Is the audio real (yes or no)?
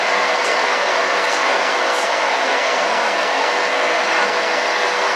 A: no